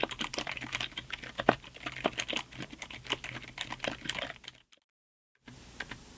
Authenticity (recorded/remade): recorded